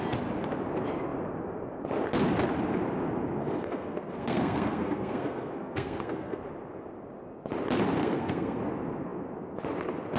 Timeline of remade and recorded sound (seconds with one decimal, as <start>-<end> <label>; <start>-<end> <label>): 0.0-3.4 recorded; 3.4-6.4 remade; 6.4-8.0 recorded; 8.0-8.6 remade; 8.6-10.2 recorded

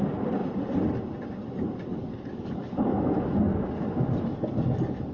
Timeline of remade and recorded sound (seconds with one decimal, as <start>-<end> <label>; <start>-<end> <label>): 0.0-1.9 recorded; 1.9-5.1 remade

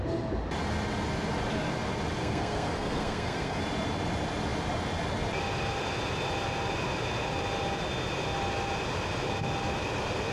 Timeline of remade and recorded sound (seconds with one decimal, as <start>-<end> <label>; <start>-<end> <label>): 0.0-2.2 recorded; 2.2-3.6 remade; 3.6-10.3 recorded

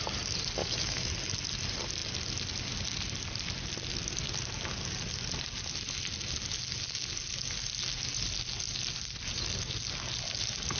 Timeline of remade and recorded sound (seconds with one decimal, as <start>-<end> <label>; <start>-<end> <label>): 0.0-0.6 recorded; 0.6-1.1 remade; 1.1-10.8 recorded

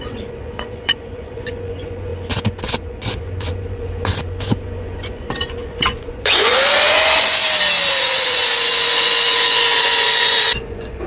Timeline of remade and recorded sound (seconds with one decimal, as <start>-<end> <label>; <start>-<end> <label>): 0.0-7.4 remade; 7.4-8.0 recorded; 8.0-11.1 remade

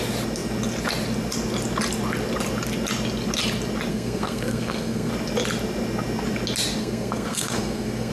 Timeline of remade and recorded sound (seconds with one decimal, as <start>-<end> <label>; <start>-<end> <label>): 0.0-3.9 recorded; 3.9-5.1 remade; 5.1-6.8 recorded; 6.8-8.1 remade

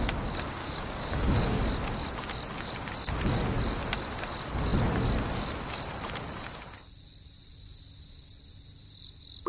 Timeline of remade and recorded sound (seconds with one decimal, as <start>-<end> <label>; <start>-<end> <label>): 0.0-0.6 recorded; 0.6-1.6 remade; 1.6-9.5 recorded

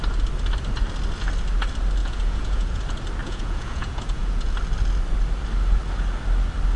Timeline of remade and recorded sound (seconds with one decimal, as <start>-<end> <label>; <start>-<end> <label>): 0.0-2.0 recorded; 2.0-2.8 remade; 2.8-3.2 recorded; 3.2-4.5 remade; 4.5-6.8 recorded